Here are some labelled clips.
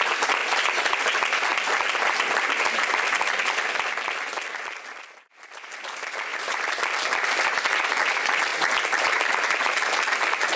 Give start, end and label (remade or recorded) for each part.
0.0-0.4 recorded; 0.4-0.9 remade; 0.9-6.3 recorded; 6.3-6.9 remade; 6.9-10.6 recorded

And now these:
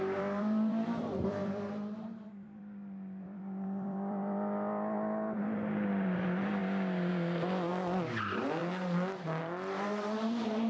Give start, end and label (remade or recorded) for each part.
0.0-6.6 remade; 6.6-7.1 recorded; 7.1-7.7 remade; 7.7-8.2 recorded; 8.2-8.6 remade; 8.6-9.4 recorded; 9.4-10.7 remade

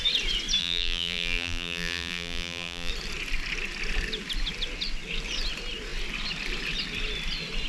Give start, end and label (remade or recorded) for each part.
0.0-0.6 recorded; 0.6-2.9 remade; 2.9-7.7 recorded

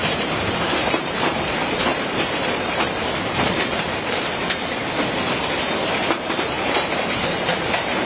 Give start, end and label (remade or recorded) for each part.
0.0-4.8 remade; 4.8-6.0 recorded; 6.0-8.1 remade

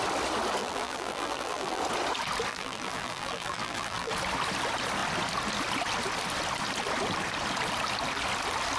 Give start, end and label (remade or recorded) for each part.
0.0-0.6 recorded; 0.6-1.8 remade; 1.8-2.5 recorded; 2.5-4.1 remade; 4.1-8.8 recorded

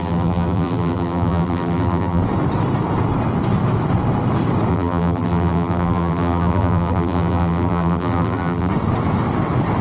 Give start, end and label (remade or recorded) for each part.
0.0-2.2 remade; 2.2-4.7 recorded; 4.7-8.7 remade; 8.7-9.8 recorded

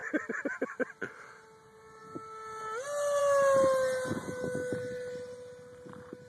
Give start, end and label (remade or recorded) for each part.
0.0-6.3 recorded

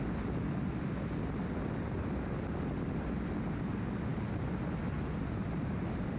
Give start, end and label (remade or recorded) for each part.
0.0-6.2 recorded